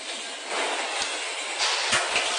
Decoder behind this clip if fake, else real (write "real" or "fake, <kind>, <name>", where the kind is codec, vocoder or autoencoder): real